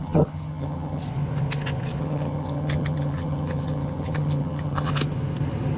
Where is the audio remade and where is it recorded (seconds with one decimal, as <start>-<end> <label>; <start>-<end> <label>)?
0.0-1.0 remade; 1.0-2.0 recorded; 2.0-4.9 remade; 4.9-5.8 recorded